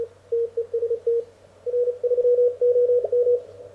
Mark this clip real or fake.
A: real